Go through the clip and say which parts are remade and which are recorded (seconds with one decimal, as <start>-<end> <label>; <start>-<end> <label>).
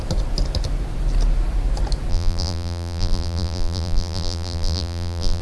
0.0-2.1 recorded; 2.1-5.4 remade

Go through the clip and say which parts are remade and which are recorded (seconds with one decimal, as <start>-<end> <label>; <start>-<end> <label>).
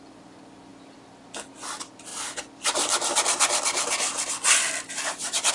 0.0-2.1 recorded; 2.1-5.5 remade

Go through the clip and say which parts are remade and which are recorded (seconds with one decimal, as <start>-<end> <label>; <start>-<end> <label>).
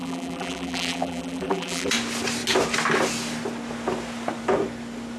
0.0-1.9 remade; 1.9-5.2 recorded